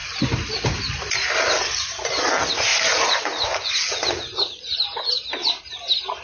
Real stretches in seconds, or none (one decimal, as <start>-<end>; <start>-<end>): 0.0-6.2